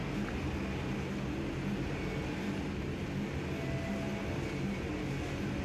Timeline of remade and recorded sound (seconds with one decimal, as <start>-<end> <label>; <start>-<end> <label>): 0.0-5.6 recorded